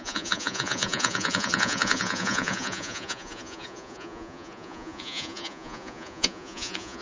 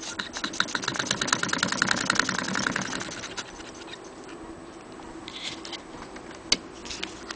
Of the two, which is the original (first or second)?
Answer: second